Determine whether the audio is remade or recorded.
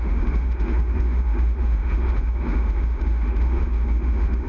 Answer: remade